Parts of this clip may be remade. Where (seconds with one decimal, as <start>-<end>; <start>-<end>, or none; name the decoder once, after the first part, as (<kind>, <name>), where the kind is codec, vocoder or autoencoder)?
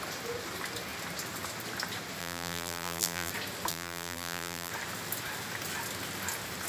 2.2-3.3 (vocoder, BigVGAN v2); 3.7-4.7